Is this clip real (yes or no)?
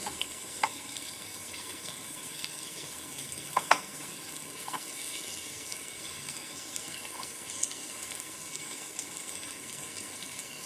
no